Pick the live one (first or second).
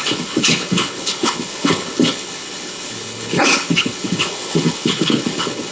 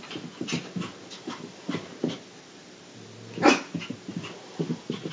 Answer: second